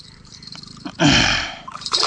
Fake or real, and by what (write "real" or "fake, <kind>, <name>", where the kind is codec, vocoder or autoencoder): fake, vocoder, BigVGAN v2